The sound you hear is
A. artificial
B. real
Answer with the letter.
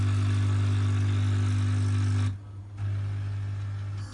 B